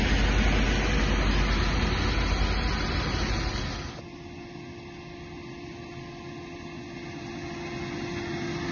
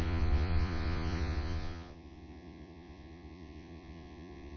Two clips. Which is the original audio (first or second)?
first